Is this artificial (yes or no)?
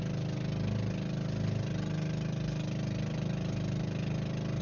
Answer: no